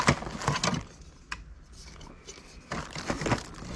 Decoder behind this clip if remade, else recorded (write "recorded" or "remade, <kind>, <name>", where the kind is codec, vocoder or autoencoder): recorded